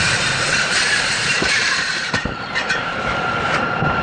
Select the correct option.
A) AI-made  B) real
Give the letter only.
A